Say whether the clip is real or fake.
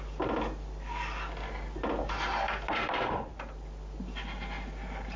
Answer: real